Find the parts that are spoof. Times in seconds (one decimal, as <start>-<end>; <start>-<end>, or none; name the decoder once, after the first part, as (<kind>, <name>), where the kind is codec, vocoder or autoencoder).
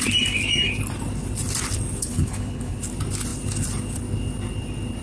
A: 2.0-2.8 (codec, HILCodec)